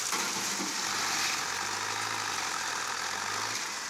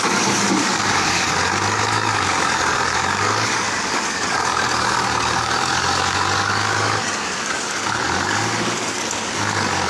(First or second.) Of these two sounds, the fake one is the second